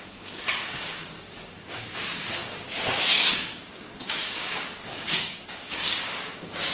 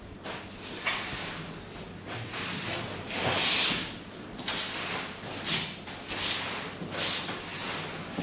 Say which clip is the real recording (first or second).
second